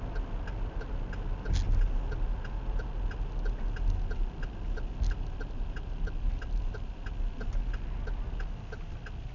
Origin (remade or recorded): recorded